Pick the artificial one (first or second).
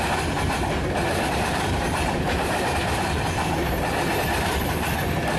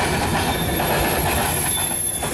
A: first